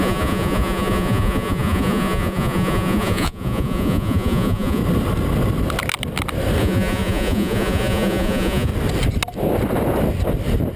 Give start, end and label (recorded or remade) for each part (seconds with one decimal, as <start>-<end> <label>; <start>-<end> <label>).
0.0-4.8 remade; 4.8-6.6 recorded; 6.6-8.7 remade; 8.7-10.8 recorded